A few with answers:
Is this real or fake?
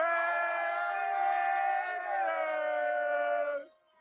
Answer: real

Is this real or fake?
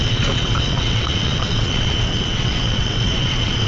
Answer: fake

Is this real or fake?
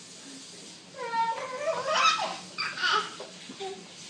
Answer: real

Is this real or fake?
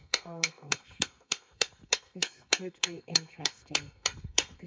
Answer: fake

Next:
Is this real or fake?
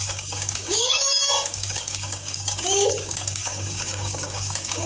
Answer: fake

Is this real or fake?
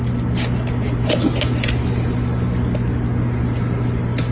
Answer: real